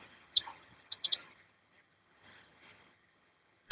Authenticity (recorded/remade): remade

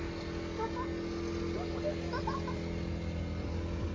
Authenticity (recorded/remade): recorded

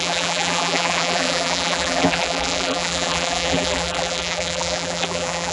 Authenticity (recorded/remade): remade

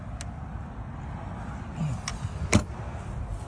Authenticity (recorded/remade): recorded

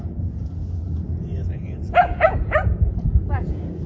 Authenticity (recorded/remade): remade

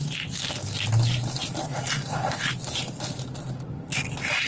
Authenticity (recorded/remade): recorded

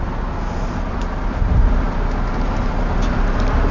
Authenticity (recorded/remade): recorded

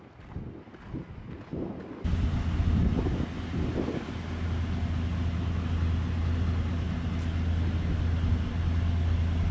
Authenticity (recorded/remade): recorded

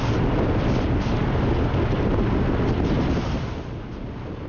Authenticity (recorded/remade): recorded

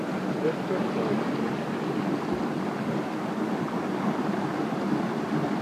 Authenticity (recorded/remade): recorded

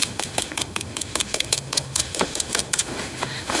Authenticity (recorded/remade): remade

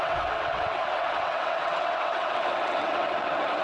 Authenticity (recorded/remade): remade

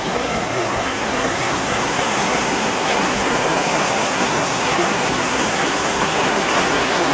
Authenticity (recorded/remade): remade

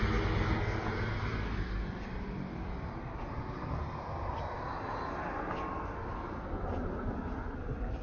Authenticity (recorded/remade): recorded